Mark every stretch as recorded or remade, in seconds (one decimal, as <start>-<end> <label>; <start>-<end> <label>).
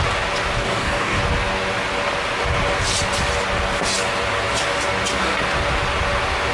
0.0-0.6 recorded; 0.6-1.2 remade; 1.2-6.5 recorded